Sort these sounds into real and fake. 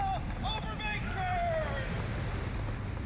real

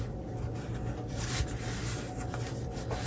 real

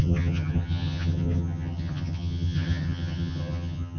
fake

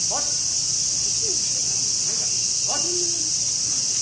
real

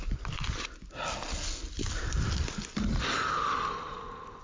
real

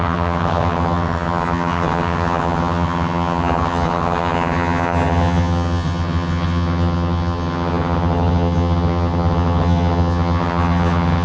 fake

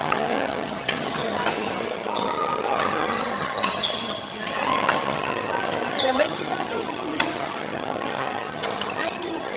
fake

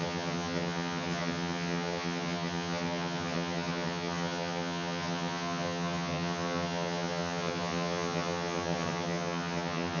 fake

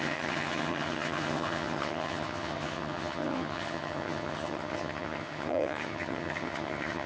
fake